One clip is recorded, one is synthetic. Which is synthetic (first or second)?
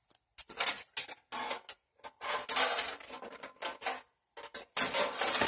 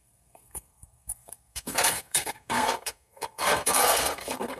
second